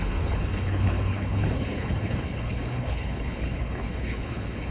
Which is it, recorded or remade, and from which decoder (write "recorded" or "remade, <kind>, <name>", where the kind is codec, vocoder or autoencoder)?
remade, codec, HILCodec